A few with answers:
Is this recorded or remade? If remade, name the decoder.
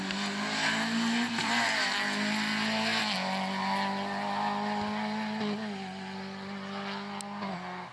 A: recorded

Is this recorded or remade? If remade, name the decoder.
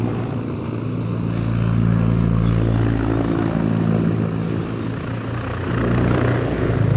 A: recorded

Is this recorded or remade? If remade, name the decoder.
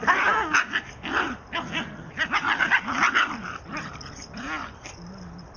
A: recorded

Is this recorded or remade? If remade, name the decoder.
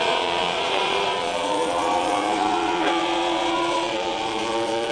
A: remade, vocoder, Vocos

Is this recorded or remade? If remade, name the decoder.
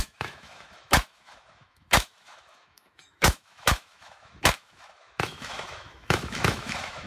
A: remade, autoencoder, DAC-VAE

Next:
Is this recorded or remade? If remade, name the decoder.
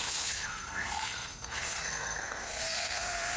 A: remade, codec, SNAC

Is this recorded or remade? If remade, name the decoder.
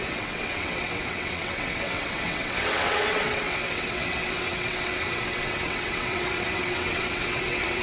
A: remade, vocoder, WaveNeXt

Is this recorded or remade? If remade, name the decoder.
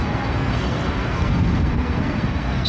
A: remade, codec, SNAC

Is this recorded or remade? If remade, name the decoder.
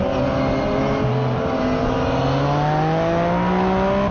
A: recorded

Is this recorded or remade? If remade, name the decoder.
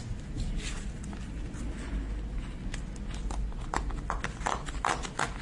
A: recorded